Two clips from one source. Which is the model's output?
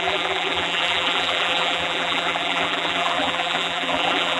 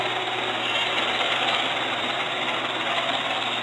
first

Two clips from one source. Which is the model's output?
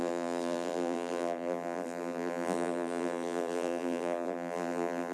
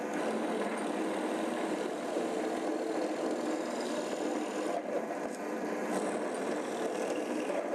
first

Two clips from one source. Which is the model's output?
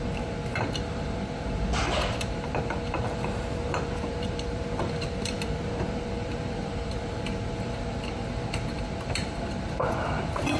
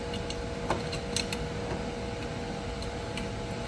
first